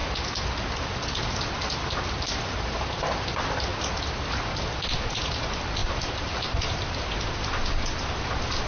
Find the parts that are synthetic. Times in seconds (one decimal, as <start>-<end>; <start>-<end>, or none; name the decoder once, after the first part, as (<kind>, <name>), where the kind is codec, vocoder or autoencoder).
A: 5.8-7.1 (vocoder, BigVGAN v2)